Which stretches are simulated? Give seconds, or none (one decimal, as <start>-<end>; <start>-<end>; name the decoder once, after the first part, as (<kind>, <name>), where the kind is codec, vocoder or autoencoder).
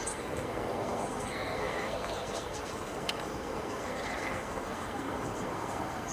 0.0-6.1 (codec, SNAC)